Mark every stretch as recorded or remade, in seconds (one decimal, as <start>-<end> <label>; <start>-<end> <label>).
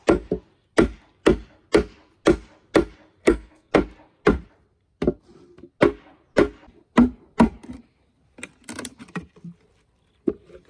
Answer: 0.0-3.2 recorded; 3.2-3.7 remade; 3.7-10.7 recorded